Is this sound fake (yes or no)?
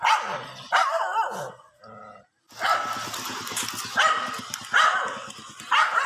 no